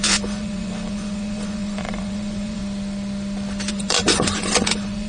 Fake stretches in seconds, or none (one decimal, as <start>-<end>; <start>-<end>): 0.0-2.6; 3.7-5.1

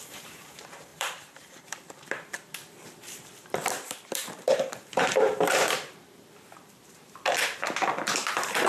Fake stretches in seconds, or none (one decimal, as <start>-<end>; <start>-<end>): 0.0-8.7

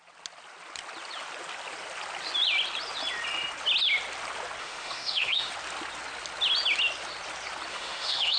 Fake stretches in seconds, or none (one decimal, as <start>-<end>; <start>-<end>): 4.6-5.5; 7.7-8.4

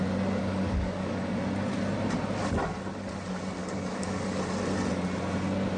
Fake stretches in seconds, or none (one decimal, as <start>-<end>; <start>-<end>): 0.4-1.3; 3.6-4.4

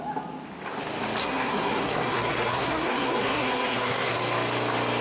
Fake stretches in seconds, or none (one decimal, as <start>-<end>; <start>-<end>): 1.2-4.2

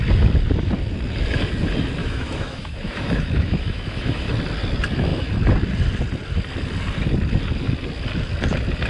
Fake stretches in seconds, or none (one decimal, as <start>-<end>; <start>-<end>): 2.0-4.3

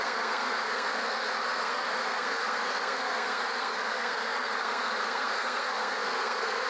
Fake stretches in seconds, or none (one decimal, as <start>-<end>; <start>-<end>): 0.0-6.7

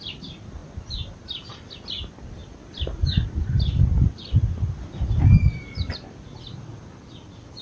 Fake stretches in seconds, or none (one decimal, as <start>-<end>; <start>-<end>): none